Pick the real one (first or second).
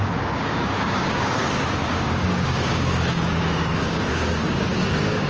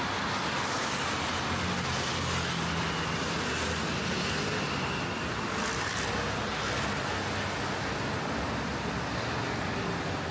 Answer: second